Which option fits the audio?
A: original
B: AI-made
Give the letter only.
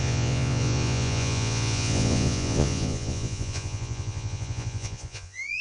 B